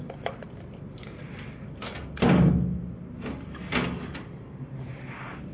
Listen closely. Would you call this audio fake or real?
real